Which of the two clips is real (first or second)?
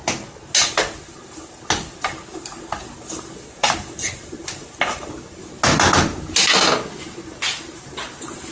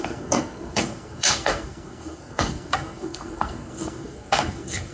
first